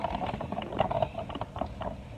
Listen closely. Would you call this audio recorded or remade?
recorded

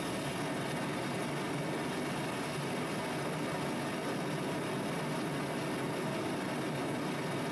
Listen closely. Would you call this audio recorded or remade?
recorded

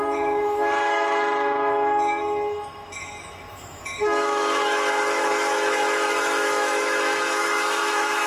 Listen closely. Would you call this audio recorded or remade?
remade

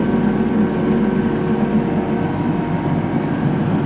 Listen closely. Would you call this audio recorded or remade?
recorded